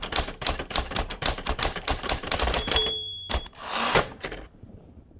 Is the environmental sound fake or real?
fake